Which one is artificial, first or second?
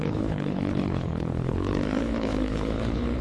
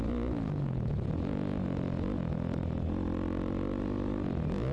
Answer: first